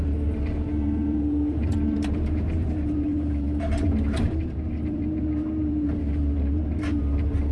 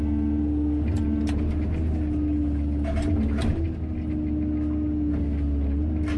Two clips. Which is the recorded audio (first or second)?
second